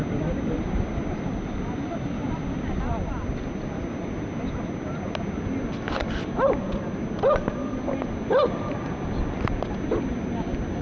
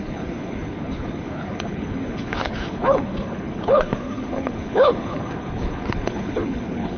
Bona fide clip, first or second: first